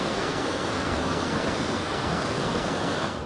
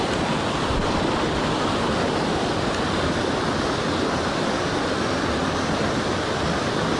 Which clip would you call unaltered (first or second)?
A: second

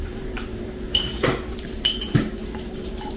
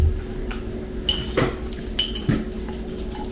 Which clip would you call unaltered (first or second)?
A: second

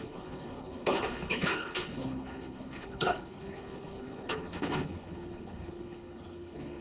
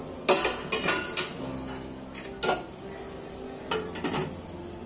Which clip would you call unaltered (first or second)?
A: second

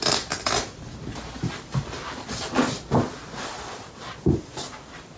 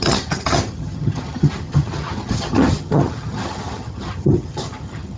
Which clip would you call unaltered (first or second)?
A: first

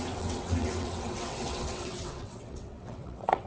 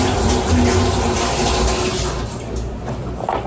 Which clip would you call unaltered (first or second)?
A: second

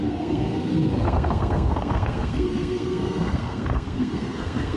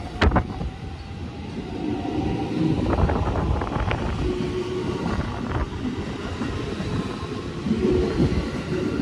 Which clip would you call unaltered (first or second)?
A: second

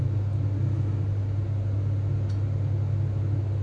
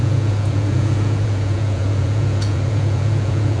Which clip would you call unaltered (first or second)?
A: first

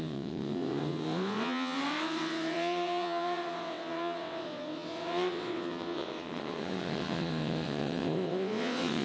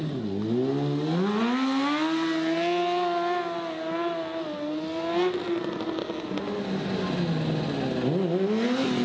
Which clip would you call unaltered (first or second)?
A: second